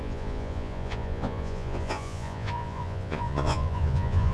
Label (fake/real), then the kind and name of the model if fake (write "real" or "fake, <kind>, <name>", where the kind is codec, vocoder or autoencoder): fake, vocoder, Vocos